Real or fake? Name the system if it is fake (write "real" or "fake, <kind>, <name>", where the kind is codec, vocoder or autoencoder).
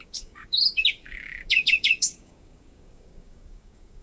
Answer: fake, codec, DAC